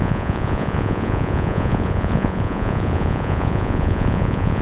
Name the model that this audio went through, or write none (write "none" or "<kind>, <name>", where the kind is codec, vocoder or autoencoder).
vocoder, Vocos